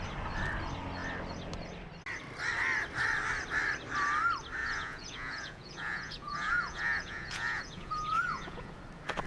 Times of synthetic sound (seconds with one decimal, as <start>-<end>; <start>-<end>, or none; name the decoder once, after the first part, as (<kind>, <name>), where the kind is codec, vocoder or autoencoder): 4.6-8.7 (vocoder, Vocos)